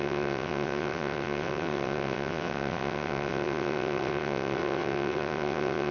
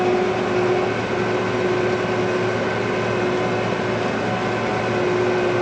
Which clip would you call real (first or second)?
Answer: second